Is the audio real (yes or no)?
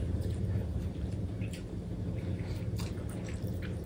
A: no